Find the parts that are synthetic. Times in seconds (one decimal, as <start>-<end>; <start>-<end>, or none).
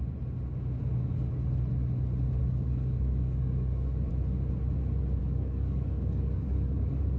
0.8-1.3; 2.4-4.1; 5.2-7.2